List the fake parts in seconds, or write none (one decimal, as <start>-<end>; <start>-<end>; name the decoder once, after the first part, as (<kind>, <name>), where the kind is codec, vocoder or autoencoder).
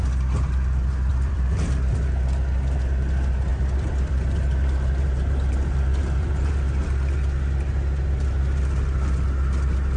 1.1-1.9 (vocoder, BigVGAN v2); 3.5-6.5